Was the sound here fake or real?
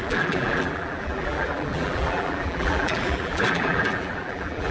fake